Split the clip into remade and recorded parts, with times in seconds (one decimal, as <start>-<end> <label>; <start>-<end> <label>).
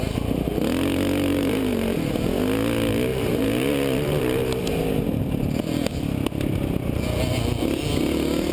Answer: 0.0-1.3 recorded; 1.3-2.1 remade; 2.1-3.1 recorded; 3.1-5.2 remade; 5.2-8.5 recorded